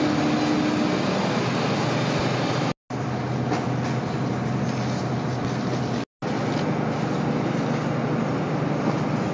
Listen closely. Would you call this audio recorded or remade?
recorded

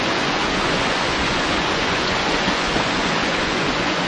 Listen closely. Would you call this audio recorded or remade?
remade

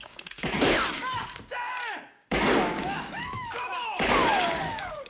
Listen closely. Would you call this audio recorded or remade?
remade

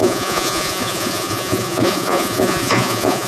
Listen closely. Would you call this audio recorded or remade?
remade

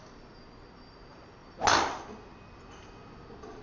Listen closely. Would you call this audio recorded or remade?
recorded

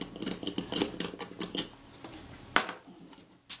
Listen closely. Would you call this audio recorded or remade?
recorded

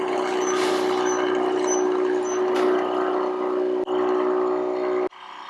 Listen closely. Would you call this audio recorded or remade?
recorded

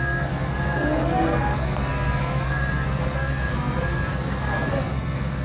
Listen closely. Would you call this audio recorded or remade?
remade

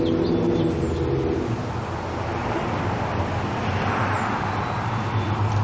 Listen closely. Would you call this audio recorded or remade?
recorded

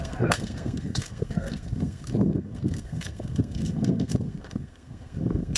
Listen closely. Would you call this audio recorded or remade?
remade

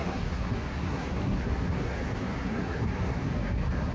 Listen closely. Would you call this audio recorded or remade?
remade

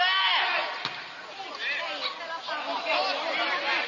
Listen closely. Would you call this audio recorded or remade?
recorded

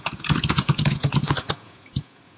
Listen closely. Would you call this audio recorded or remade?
remade